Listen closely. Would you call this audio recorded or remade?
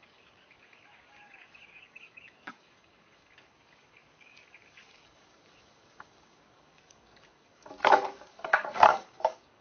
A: remade